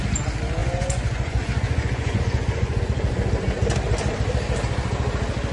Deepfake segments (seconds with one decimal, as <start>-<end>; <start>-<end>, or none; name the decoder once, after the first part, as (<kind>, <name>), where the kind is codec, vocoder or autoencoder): 0.6-2.8 (vocoder, Vocos)